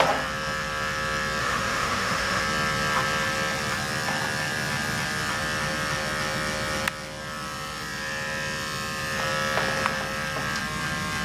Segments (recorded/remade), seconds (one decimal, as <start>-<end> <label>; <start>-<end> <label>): 0.0-1.4 recorded; 1.4-2.4 remade; 2.4-11.2 recorded